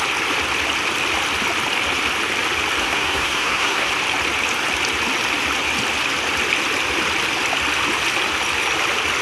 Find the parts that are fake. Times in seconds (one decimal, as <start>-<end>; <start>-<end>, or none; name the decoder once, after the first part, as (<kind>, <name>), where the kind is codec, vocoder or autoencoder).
2.8-3.9 (codec, SNAC)